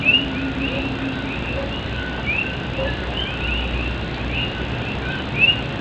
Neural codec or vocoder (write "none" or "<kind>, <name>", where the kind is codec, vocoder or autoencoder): none